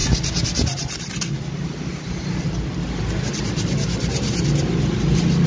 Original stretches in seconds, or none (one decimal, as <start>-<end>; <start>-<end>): 0.0-5.5